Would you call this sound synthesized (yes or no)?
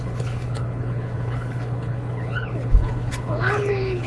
yes